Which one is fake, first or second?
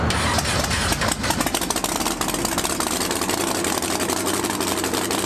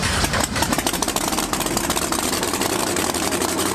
second